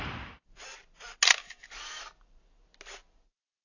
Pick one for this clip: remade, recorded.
recorded